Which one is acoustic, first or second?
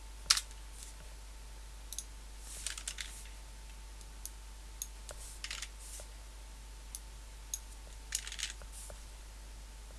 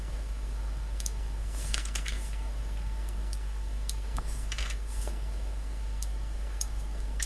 first